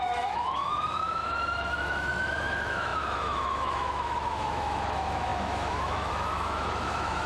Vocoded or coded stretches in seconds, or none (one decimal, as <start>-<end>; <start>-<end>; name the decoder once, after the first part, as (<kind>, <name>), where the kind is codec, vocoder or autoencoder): 0.0-7.3 (autoencoder, DAC-VAE)